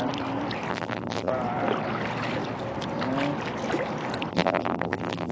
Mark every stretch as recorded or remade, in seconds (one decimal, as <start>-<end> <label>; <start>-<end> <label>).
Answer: 0.0-0.7 recorded; 0.7-1.3 remade; 1.3-4.3 recorded; 4.3-5.3 remade